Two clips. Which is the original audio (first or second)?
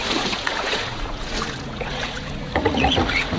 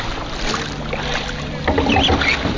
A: second